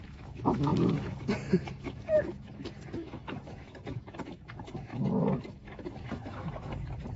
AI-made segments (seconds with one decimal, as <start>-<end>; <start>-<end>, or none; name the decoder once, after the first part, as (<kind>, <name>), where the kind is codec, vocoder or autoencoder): 0.0-7.2 (autoencoder, DAC-VAE)